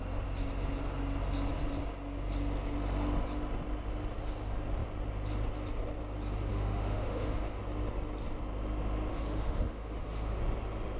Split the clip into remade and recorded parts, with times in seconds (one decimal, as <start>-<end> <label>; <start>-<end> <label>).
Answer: 0.0-6.5 recorded; 6.5-7.6 remade; 7.6-9.1 recorded; 9.1-10.4 remade; 10.4-11.0 recorded